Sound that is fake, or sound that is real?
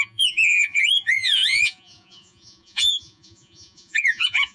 fake